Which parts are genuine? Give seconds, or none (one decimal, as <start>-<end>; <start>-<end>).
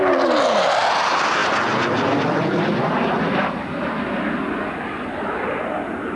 0.0-6.2